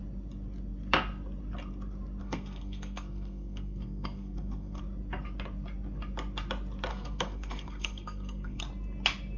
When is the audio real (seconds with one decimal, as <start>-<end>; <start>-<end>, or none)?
0.0-2.2; 4.8-6.9; 8.6-9.4